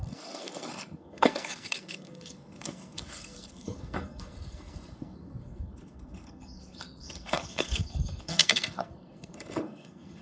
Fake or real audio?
fake